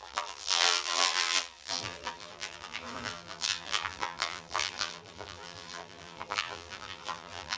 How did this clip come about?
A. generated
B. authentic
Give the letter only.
A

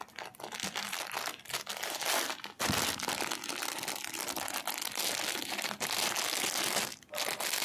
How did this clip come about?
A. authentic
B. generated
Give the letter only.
A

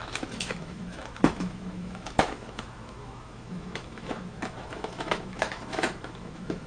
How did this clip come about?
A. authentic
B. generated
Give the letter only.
B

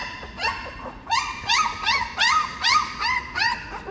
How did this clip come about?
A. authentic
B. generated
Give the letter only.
B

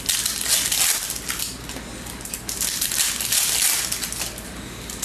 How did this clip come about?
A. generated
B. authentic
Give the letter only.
B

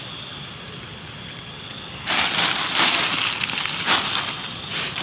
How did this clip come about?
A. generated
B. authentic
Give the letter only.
B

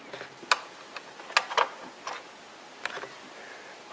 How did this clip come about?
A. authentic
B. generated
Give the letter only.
A